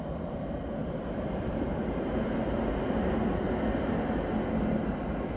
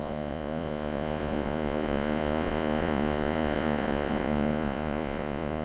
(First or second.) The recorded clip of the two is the first